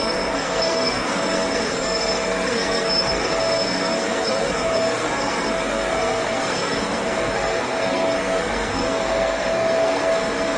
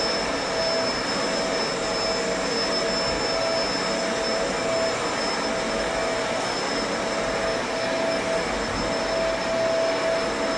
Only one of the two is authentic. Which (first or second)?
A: second